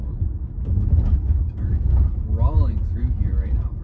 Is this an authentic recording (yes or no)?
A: yes